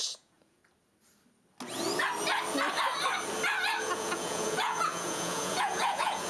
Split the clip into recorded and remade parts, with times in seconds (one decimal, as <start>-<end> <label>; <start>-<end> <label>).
0.0-0.6 remade; 0.6-3.8 recorded; 3.8-6.3 remade